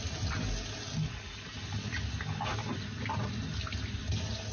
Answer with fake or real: real